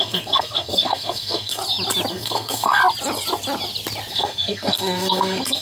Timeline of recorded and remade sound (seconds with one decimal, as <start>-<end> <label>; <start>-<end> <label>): 0.0-1.6 remade; 1.6-2.1 recorded; 2.1-2.8 remade; 2.8-4.1 recorded; 4.1-5.6 remade